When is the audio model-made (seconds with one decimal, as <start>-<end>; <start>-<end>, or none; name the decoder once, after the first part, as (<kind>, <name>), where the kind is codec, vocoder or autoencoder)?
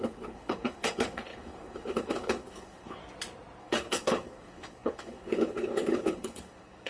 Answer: 0.0-3.0 (codec, HILCodec); 3.6-6.9